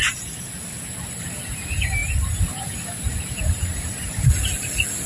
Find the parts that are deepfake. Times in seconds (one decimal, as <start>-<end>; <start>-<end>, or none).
none